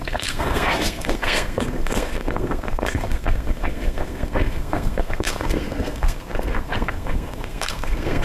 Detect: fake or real fake